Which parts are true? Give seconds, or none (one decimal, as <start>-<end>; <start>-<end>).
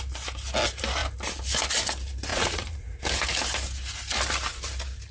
0.0-2.3; 3.0-5.1